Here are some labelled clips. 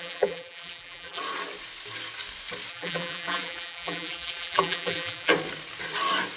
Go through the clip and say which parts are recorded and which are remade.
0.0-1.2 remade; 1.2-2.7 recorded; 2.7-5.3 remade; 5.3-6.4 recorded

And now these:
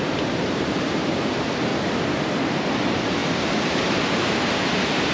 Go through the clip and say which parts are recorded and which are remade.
0.0-1.7 remade; 1.7-2.8 recorded; 2.8-5.1 remade

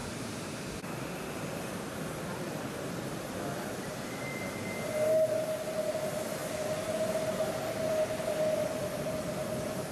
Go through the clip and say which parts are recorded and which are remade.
0.0-9.9 recorded

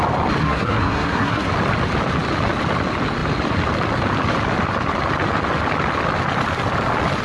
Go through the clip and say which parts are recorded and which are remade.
0.0-0.4 recorded; 0.4-1.5 remade; 1.5-7.2 recorded

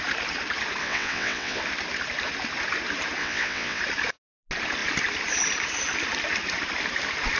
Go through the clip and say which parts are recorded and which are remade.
0.0-0.8 recorded; 0.8-1.6 remade; 1.6-3.2 recorded; 3.2-3.8 remade; 3.8-7.4 recorded